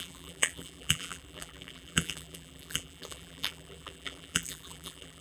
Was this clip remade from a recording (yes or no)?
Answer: yes